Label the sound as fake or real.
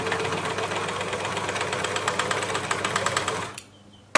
real